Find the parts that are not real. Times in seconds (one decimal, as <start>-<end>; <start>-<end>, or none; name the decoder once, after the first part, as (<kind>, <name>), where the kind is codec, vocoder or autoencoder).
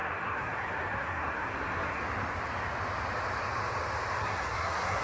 0.0-2.0 (codec, SNAC); 4.2-5.0